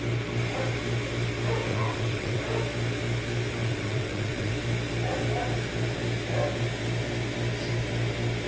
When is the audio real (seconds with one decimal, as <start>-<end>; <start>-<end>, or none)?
0.0-1.7; 2.4-3.6; 4.5-8.5